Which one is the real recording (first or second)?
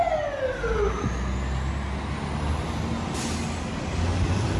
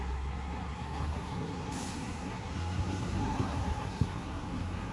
first